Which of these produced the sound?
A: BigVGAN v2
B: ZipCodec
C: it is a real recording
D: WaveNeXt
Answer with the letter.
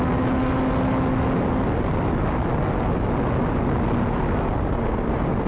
C